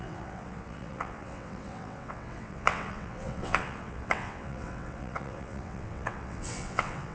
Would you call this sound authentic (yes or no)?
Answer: no